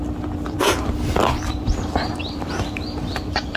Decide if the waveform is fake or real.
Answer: fake